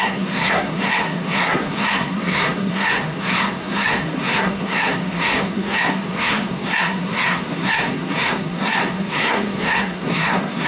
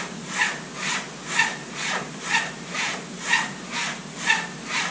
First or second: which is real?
second